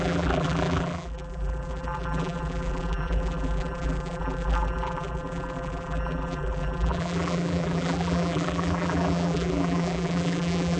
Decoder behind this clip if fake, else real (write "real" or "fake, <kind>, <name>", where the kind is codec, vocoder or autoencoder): fake, vocoder, BigVGAN v2